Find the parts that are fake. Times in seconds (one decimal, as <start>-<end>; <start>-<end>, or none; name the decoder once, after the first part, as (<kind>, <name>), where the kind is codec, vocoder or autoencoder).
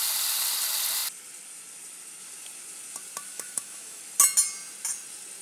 3.3-4.0 (autoencoder, DAC-VAE)